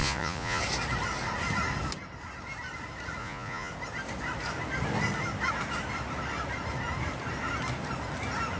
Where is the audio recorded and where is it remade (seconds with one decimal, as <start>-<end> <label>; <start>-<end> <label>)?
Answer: 0.0-0.6 remade; 0.6-3.2 recorded; 3.2-3.7 remade; 3.7-8.6 recorded